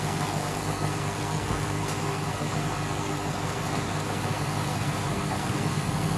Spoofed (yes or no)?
yes